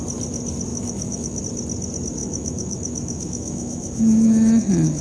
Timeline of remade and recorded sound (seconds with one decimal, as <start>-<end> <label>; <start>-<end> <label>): 0.0-0.7 recorded; 0.7-1.4 remade; 1.4-2.2 recorded; 2.2-5.0 remade